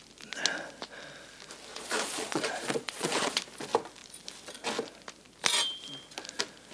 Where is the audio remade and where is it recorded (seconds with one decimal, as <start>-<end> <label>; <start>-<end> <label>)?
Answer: 0.0-1.7 recorded; 1.7-3.4 remade; 3.4-6.7 recorded

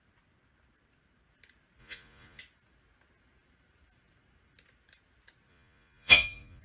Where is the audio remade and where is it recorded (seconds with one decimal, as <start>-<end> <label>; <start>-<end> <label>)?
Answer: 0.0-1.8 recorded; 1.8-2.4 remade; 2.4-5.5 recorded; 5.5-6.6 remade